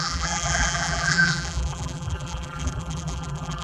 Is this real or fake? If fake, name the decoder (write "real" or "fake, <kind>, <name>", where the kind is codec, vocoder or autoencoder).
fake, vocoder, BigVGAN v2